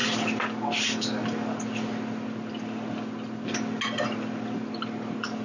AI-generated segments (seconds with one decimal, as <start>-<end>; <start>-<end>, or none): none